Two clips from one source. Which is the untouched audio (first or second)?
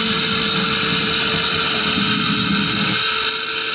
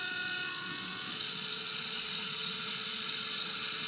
first